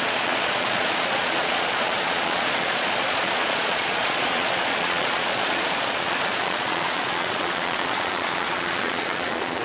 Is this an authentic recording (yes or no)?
no